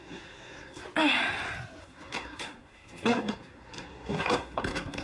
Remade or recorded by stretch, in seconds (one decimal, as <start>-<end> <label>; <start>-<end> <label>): 0.0-0.8 remade; 0.8-1.8 recorded; 1.8-5.0 remade